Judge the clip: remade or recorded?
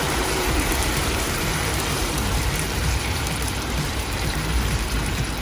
remade